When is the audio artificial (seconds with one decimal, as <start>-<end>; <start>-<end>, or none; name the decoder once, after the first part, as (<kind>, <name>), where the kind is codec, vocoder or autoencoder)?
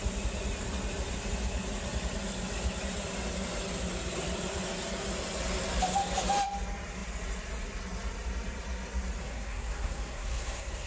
9.2-10.9 (codec, SNAC)